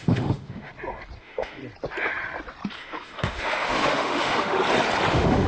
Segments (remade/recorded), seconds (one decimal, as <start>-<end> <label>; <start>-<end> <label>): 0.0-0.7 remade; 0.7-1.2 recorded; 1.2-1.6 remade; 1.6-2.8 recorded; 2.8-4.6 remade; 4.6-5.1 recorded; 5.1-5.5 remade